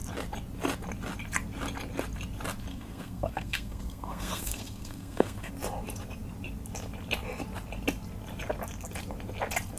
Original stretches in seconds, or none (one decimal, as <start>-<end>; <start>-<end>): 0.0-2.7; 5.5-9.8